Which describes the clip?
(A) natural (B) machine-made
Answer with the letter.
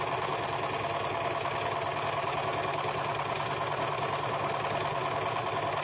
A